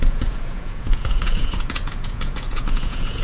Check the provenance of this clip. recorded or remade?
remade